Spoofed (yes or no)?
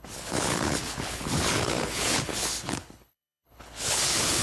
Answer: yes